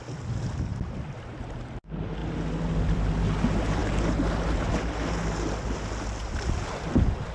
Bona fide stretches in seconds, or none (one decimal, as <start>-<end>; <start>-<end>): 0.0-7.3